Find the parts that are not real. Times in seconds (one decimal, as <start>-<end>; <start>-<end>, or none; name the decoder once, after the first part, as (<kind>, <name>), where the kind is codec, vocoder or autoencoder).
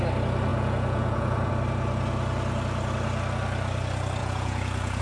0.5-1.5 (vocoder, Vocos); 4.2-5.0